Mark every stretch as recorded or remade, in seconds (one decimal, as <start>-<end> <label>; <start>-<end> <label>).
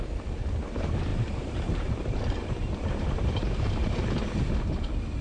0.0-1.1 recorded; 1.1-4.2 remade; 4.2-5.2 recorded